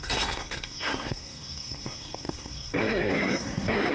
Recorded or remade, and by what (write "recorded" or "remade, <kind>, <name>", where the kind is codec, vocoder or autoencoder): remade, codec, SNAC